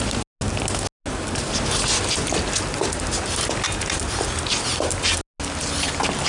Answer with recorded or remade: recorded